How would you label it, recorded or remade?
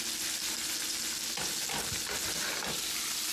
recorded